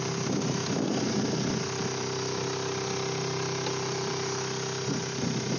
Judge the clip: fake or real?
real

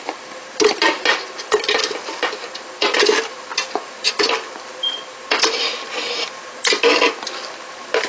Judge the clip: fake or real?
real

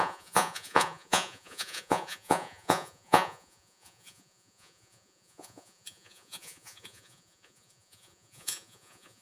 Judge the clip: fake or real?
fake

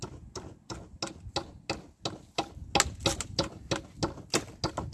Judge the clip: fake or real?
real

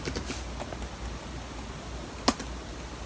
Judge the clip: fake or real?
real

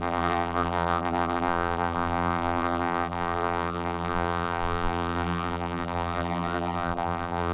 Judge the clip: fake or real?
fake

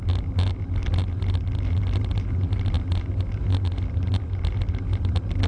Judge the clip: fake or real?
real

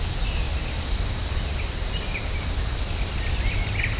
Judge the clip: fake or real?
real